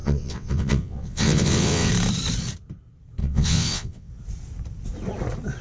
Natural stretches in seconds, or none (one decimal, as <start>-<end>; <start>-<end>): 1.9-3.2; 4.1-5.6

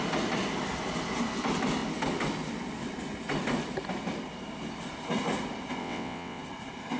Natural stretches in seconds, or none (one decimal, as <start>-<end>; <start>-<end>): 0.0-5.8; 6.4-7.0

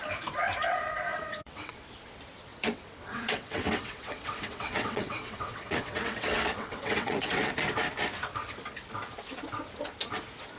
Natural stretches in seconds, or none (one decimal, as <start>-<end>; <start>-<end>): 0.0-1.1; 1.8-2.5; 7.5-10.6

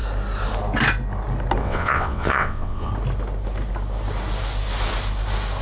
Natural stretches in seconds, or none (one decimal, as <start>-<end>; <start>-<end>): 0.0-1.6; 2.9-5.6

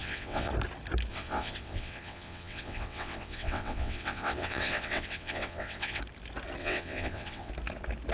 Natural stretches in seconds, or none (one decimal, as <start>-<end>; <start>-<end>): 0.5-1.1; 6.0-6.6; 7.5-8.1

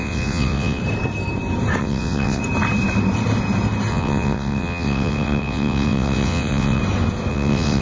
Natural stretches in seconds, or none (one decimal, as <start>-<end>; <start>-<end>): 0.8-1.8; 2.4-3.9; 6.8-7.3

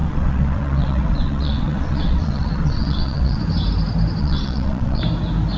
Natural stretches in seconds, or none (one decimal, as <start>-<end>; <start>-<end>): 3.4-4.2; 5.0-5.6

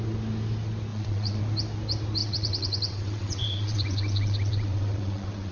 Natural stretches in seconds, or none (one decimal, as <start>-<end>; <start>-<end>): 0.0-0.9; 1.4-2.2